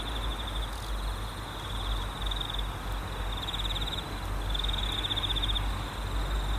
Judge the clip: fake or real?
real